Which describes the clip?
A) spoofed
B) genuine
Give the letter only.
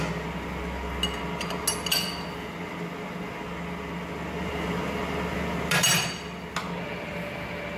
B